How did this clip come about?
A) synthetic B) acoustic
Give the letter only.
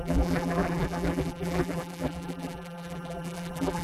A